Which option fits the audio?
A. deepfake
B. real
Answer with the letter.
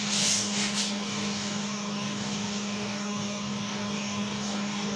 A